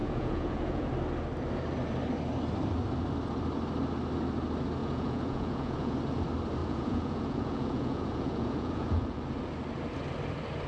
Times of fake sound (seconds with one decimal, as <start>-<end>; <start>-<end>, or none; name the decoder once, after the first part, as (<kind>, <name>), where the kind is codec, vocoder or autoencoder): 0.0-0.9 (vocoder, Vocos); 4.8-5.9; 6.6-9.2